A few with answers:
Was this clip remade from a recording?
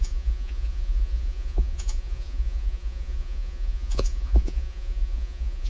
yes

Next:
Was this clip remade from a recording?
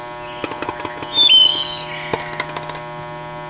no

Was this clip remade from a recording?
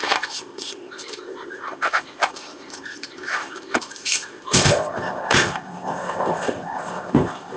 yes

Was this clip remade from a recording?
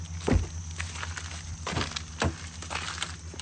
no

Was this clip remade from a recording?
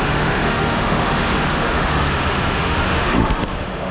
yes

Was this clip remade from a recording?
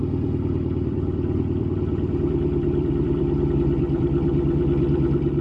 yes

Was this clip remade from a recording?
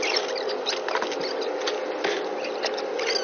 no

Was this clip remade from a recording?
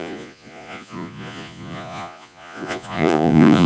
yes